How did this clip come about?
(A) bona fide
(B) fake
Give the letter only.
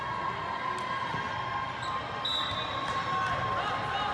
A